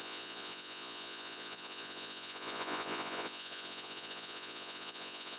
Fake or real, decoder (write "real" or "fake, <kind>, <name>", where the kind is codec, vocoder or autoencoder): fake, vocoder, Vocos